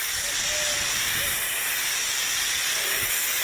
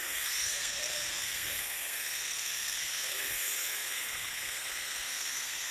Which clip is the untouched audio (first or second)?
first